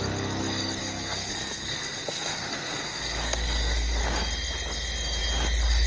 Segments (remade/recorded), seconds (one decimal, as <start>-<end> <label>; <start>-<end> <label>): 0.0-0.8 recorded; 0.8-4.0 remade; 4.0-5.9 recorded